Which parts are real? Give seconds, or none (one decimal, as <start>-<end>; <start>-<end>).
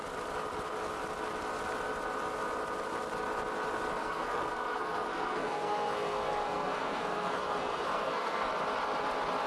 0.0-4.0; 8.5-9.5